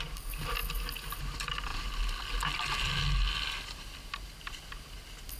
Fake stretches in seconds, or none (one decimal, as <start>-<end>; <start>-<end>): none